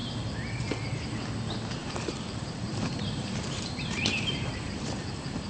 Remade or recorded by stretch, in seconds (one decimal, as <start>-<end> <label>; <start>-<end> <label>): 0.0-1.8 recorded; 1.8-5.1 remade; 5.1-5.5 recorded